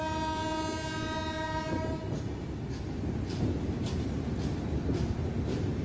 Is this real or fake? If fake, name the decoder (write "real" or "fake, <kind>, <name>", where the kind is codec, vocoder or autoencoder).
real